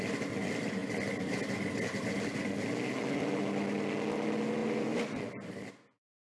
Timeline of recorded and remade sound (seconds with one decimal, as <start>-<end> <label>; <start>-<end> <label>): 0.0-6.2 recorded